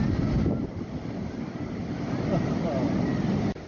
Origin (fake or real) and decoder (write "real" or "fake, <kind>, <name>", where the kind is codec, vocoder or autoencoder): real